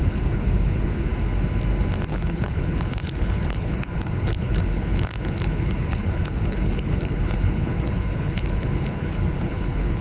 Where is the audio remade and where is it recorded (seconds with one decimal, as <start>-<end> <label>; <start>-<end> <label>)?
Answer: 0.0-1.1 remade; 1.1-2.1 recorded; 2.1-10.0 remade